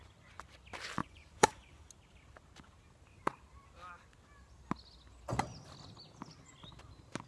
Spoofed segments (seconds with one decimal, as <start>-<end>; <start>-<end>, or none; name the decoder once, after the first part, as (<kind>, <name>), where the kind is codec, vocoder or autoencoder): 1.0-1.9 (vocoder, Vocos)